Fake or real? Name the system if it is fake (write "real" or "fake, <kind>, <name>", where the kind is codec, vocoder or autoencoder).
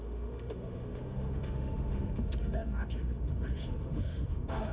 fake, autoencoder, DAC-VAE